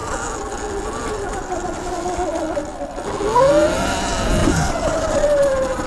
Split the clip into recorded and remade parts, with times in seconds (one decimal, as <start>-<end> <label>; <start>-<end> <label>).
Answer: 0.0-5.9 recorded